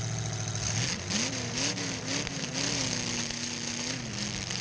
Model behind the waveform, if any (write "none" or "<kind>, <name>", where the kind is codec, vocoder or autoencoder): none